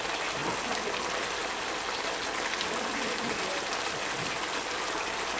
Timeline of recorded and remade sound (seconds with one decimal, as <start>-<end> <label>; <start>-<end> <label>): 0.0-5.4 recorded

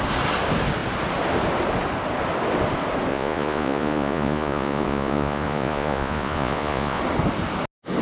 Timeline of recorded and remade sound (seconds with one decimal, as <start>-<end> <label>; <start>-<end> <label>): 0.0-3.1 recorded; 3.1-7.0 remade; 7.0-8.0 recorded

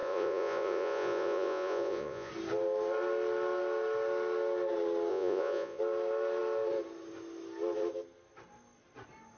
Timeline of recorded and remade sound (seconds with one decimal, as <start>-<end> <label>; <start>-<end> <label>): 0.0-2.3 remade; 2.3-5.1 recorded; 5.1-5.8 remade; 5.8-9.4 recorded

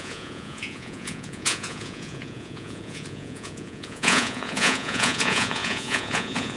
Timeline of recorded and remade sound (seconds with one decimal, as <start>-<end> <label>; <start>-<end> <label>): 0.0-6.6 remade

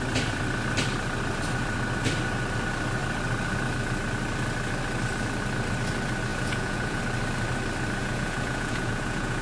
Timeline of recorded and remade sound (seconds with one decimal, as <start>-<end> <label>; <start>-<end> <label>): 0.0-6.3 recorded; 6.3-7.0 remade; 7.0-8.0 recorded; 8.0-9.4 remade

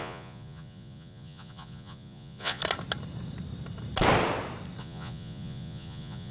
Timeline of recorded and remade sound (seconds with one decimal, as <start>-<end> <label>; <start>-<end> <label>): 0.0-2.6 remade; 2.6-4.8 recorded; 4.8-6.3 remade

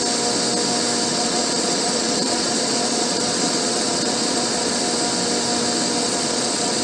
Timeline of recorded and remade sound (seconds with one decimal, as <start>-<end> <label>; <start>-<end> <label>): 0.0-1.1 recorded; 1.1-4.8 remade; 4.8-6.0 recorded; 6.0-6.8 remade

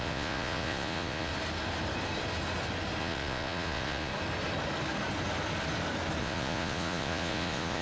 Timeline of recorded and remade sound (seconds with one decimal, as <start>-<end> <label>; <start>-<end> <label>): 0.0-1.3 remade; 1.3-3.0 recorded; 3.0-4.1 remade; 4.1-6.2 recorded; 6.2-7.8 remade